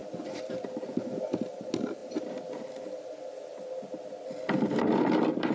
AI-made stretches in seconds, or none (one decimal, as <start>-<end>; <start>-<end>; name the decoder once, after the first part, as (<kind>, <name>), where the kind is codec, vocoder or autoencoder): none